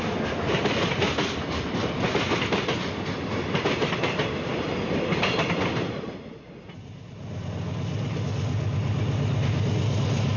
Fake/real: real